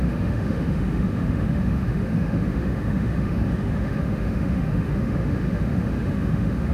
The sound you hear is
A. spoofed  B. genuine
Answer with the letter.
A